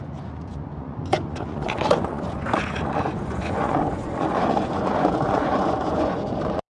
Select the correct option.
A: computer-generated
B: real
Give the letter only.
A